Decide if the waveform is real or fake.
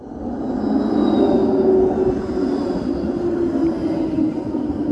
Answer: real